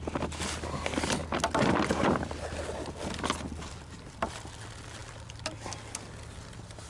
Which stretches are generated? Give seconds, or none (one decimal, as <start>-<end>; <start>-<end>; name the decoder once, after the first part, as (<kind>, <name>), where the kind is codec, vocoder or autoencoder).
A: none